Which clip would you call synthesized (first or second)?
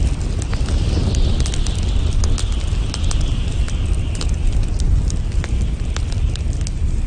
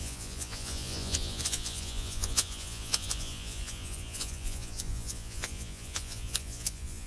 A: second